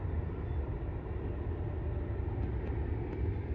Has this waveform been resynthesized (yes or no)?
no